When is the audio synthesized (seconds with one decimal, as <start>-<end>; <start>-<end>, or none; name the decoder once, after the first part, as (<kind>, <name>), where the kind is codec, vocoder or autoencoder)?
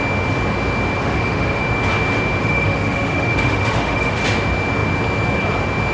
1.0-1.6 (autoencoder, DAC-VAE); 2.4-4.2